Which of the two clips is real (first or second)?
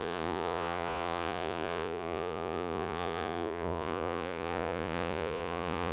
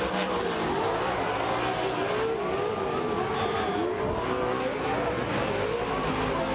second